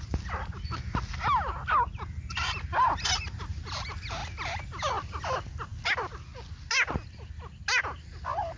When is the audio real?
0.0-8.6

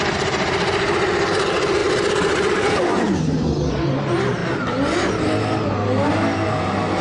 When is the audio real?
4.4-6.5

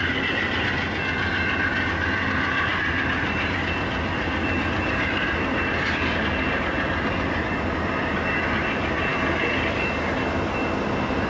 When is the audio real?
0.0-11.3

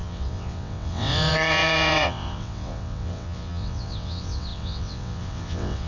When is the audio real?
none

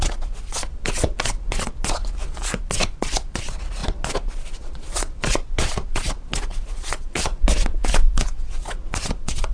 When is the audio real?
2.0-2.6

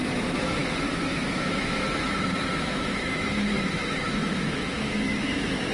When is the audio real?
none